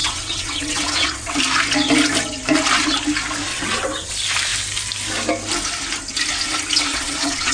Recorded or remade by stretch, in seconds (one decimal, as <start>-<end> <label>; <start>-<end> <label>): 0.0-1.4 remade; 1.4-3.5 recorded; 3.5-4.1 remade; 4.1-6.9 recorded; 6.9-7.5 remade